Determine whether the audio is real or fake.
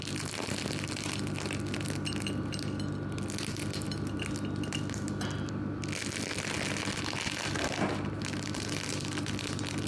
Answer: real